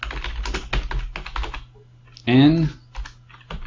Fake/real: real